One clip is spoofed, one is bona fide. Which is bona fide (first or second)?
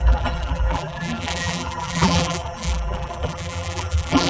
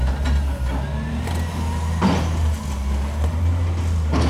second